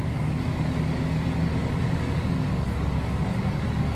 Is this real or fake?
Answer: fake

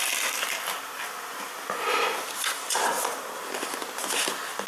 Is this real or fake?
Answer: real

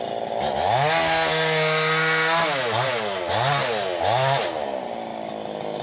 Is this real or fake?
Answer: real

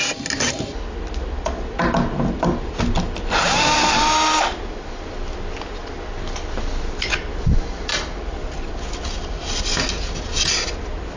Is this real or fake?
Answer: real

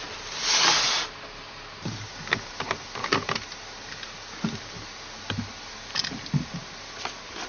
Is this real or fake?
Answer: real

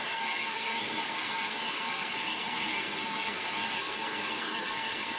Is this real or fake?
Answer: fake